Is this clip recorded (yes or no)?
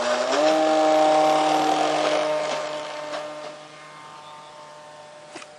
yes